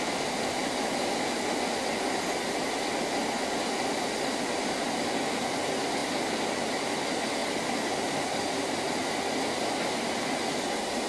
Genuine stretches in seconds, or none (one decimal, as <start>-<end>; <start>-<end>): 0.0-11.1

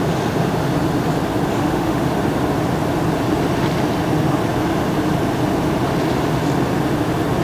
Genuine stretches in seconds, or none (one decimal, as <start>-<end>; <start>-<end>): 0.0-1.6; 2.1-7.4

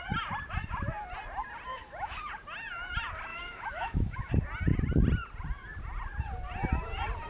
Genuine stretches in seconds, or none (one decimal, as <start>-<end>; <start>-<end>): 0.0-1.7; 2.3-3.3; 4.3-7.3

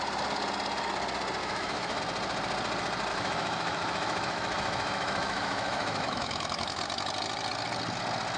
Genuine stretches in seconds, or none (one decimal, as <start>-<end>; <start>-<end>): 0.0-1.4; 2.0-3.1; 6.8-8.4

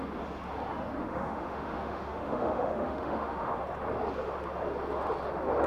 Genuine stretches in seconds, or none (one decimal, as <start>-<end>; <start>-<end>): 0.0-1.0; 3.6-5.7